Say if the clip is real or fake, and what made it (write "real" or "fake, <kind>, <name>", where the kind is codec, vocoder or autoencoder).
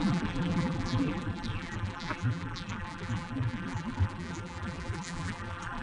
fake, vocoder, BigVGAN v2